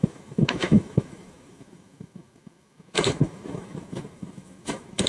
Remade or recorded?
remade